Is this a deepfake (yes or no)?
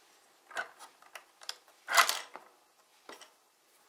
no